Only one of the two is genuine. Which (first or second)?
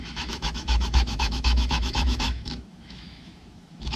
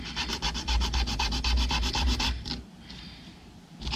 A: second